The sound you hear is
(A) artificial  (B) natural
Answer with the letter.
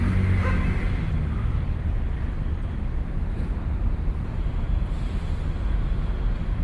B